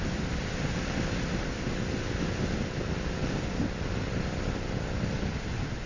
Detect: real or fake real